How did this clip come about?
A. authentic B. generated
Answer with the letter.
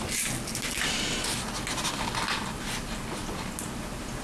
A